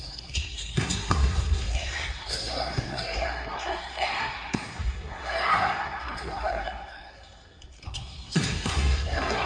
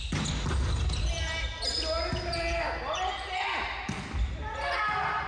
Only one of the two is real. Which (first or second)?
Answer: second